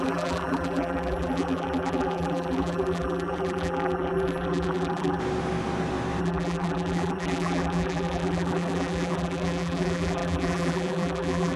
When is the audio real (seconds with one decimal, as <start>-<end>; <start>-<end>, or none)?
5.2-6.2